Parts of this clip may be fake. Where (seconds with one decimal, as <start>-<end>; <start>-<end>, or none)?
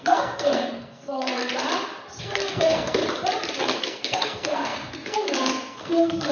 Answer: 0.0-1.4; 2.2-3.0; 3.6-6.3